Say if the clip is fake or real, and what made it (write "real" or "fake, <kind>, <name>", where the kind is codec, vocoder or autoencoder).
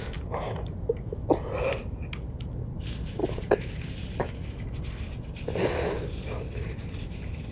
real